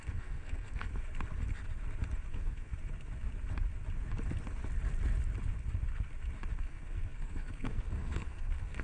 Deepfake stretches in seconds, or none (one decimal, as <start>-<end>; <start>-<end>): 0.0-0.9; 2.3-2.7; 6.6-8.8